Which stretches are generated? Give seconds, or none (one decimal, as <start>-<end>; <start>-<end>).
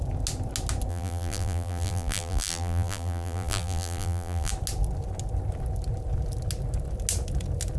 0.9-4.5